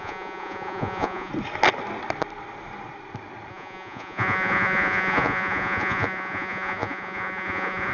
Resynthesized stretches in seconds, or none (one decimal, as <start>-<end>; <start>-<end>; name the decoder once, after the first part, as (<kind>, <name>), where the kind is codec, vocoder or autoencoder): 0.0-1.3 (vocoder, Vocos); 3.5-7.9